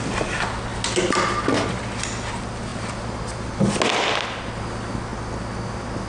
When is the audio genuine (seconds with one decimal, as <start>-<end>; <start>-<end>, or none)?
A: 0.0-6.1

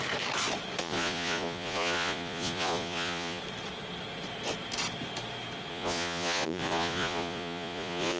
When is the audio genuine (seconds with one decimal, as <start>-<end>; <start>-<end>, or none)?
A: 0.0-0.8; 3.4-5.7

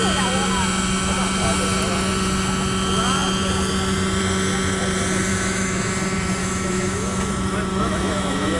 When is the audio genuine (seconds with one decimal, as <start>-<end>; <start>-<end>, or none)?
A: 0.0-5.3; 5.9-6.4; 7.3-7.7

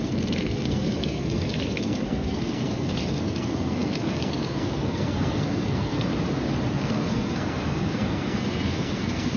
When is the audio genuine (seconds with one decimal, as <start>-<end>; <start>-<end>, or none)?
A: 6.1-6.7

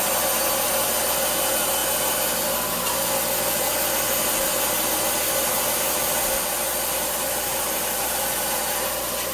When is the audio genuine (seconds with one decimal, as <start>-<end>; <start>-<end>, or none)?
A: 0.0-9.3

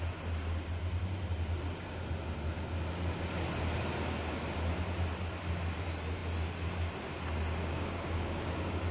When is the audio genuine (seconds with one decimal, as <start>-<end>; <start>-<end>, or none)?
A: 0.0-7.6